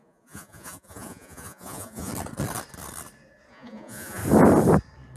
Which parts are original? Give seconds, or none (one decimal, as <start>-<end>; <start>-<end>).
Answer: 2.1-3.5; 4.2-5.2